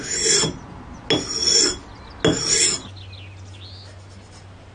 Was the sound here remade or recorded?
recorded